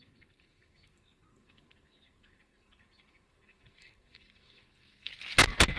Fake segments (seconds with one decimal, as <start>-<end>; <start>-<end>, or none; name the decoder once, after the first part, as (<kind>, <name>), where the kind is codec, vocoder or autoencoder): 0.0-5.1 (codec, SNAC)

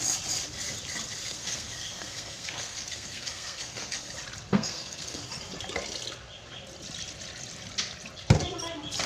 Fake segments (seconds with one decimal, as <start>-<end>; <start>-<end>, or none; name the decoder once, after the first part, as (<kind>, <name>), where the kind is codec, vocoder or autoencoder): 1.2-4.1 (codec, SNAC); 4.5-5.2

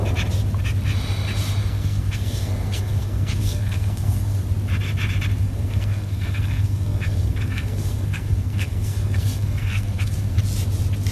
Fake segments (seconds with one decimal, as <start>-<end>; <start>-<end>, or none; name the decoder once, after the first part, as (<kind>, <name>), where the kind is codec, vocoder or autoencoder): 1.6-4.4 (codec, SNAC); 5.4-10.4